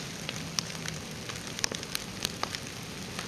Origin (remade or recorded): recorded